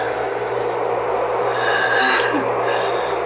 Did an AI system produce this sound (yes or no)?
no